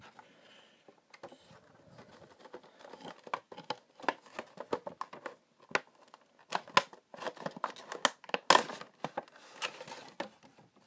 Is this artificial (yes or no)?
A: no